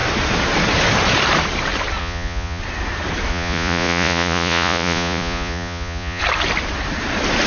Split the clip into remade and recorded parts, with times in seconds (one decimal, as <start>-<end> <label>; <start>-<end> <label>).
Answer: 0.0-2.0 recorded; 2.0-2.6 remade; 2.6-3.3 recorded; 3.3-6.2 remade; 6.2-7.5 recorded